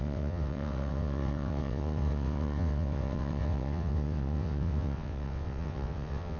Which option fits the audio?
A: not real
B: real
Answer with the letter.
A